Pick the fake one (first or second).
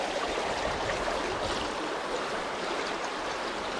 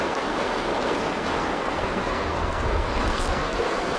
second